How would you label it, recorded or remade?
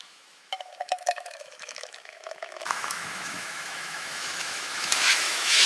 remade